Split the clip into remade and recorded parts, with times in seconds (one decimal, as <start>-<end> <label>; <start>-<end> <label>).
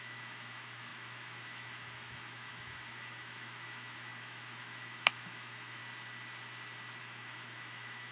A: 0.0-5.8 remade; 5.8-7.0 recorded; 7.0-8.1 remade